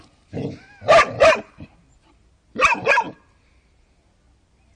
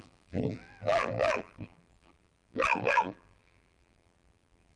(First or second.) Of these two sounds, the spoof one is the second